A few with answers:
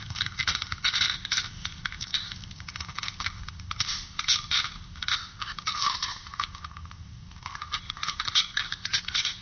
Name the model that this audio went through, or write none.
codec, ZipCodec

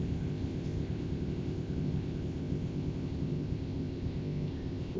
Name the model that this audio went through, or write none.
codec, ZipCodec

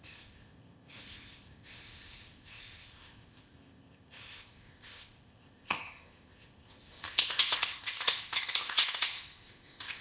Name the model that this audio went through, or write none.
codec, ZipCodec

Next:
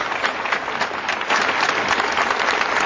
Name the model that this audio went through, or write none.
none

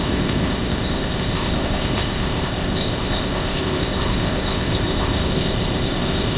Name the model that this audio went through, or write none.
codec, ZipCodec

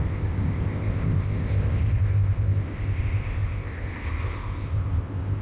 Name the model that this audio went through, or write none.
codec, ZipCodec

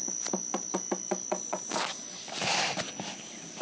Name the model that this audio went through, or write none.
none